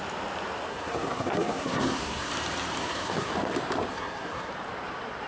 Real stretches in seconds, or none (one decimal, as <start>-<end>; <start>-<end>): 0.0-0.7; 2.3-2.8; 3.3-3.9; 4.5-5.3